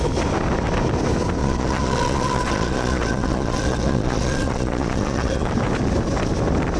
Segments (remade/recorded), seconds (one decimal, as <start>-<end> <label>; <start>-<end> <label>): 0.0-1.4 recorded; 1.4-5.5 remade; 5.5-6.8 recorded